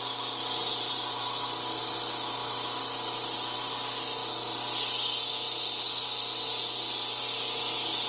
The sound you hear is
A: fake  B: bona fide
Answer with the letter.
B